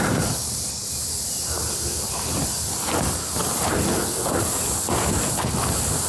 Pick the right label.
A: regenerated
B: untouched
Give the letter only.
B